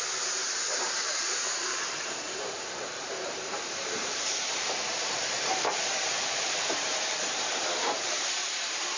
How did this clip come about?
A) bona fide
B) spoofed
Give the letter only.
B